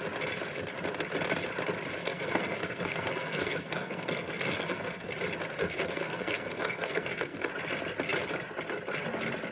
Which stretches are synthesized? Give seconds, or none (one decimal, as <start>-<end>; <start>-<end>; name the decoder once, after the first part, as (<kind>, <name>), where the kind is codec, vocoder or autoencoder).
2.0-5.1 (codec, SNAC); 5.6-7.5